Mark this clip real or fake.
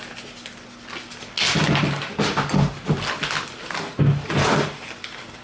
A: real